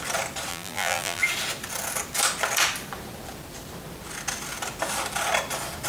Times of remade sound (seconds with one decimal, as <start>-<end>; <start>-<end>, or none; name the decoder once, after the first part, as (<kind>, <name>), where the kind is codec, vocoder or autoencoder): 0.5-1.2 (vocoder, BigVGAN v2)